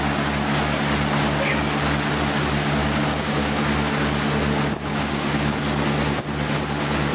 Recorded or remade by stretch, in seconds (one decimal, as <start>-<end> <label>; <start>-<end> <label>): 0.0-2.8 recorded; 2.8-3.6 remade; 3.6-4.9 recorded; 4.9-5.6 remade; 5.6-7.1 recorded